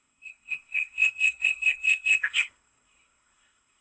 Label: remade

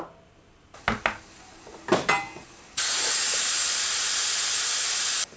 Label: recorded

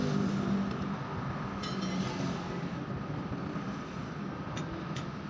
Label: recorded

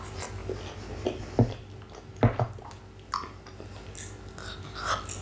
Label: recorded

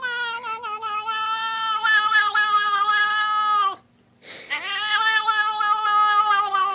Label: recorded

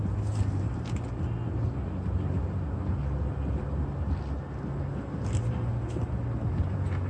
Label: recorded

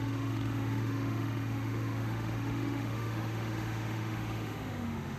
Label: remade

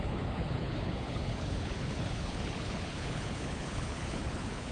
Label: remade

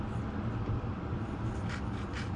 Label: recorded